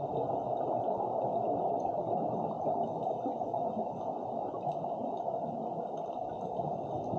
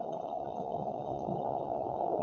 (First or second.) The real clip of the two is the first